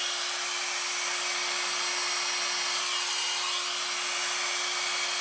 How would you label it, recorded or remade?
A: recorded